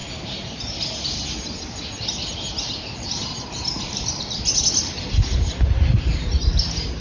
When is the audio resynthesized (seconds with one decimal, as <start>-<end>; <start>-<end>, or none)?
none